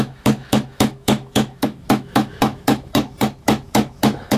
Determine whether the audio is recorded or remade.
remade